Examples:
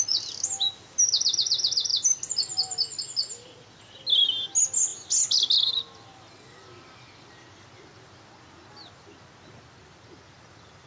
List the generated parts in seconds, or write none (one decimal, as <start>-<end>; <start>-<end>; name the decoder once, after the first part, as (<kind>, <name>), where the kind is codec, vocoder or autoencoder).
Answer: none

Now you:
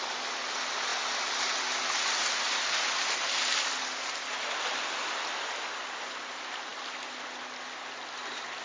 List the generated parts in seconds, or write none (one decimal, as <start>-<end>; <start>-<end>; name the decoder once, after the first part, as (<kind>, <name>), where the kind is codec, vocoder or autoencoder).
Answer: none

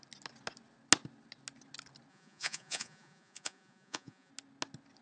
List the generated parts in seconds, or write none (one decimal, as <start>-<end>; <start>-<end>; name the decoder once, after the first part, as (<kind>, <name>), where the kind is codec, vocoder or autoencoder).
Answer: 2.1-4.3 (vocoder, Vocos)

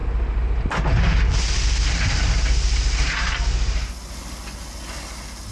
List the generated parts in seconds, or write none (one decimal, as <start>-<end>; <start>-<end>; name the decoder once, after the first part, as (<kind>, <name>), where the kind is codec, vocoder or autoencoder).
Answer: none